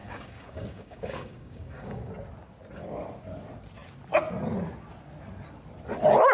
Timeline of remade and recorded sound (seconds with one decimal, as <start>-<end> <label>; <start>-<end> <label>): 0.0-2.1 remade; 2.1-6.3 recorded